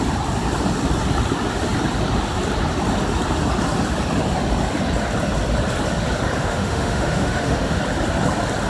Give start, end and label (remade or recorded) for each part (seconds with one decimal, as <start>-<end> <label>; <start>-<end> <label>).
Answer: 0.0-6.4 recorded; 6.4-7.8 remade; 7.8-8.7 recorded